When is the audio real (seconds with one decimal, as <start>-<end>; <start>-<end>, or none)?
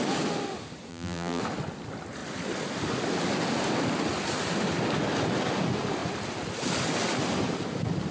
0.0-0.9; 1.4-8.1